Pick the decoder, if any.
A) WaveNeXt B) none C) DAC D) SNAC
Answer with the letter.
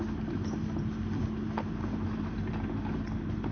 B